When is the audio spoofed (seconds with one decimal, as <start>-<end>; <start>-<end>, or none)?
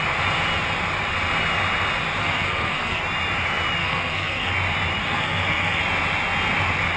2.2-3.0; 3.8-4.5; 5.0-5.8